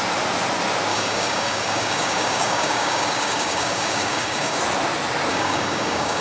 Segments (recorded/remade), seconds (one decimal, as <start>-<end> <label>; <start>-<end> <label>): 0.0-0.9 recorded; 0.9-4.6 remade; 4.6-5.3 recorded; 5.3-6.2 remade